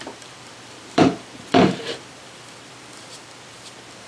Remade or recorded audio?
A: remade